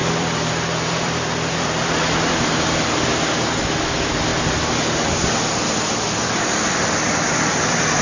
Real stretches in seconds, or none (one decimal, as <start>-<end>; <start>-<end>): 2.5-8.0